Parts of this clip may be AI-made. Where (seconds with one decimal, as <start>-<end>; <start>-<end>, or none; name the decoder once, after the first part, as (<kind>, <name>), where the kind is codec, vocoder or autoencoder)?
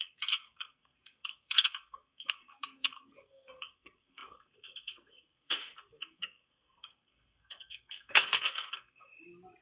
0.0-9.1 (codec, SNAC)